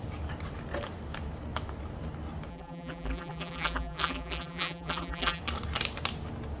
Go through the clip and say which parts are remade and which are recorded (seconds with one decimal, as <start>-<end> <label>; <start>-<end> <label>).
0.0-2.5 recorded; 2.5-5.4 remade; 5.4-6.6 recorded